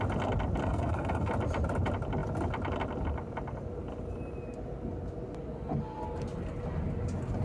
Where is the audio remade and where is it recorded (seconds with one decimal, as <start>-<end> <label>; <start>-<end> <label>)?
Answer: 0.0-0.6 recorded; 0.6-1.3 remade; 1.3-7.4 recorded